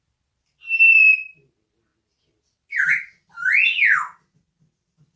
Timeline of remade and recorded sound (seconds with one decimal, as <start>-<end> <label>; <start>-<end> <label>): 0.0-5.2 recorded